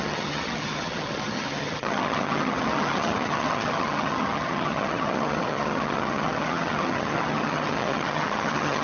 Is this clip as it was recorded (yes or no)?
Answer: no